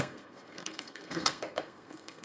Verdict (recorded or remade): remade